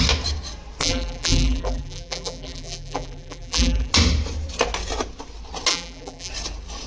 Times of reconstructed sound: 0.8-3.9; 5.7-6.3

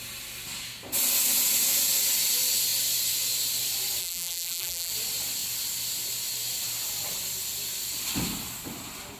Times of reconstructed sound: 4.0-4.9